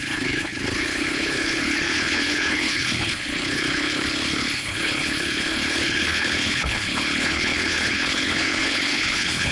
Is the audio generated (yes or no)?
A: yes